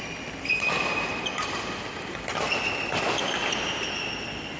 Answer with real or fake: real